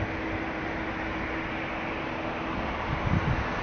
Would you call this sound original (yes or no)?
yes